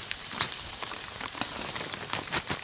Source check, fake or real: fake